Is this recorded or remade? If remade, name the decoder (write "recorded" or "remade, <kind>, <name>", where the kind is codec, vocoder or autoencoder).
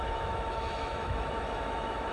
remade, autoencoder, DAC-VAE